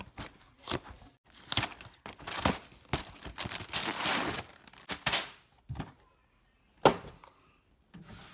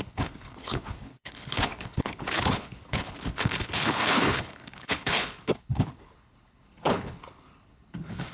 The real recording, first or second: first